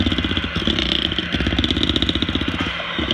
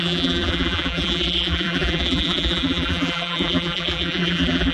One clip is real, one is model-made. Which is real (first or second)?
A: first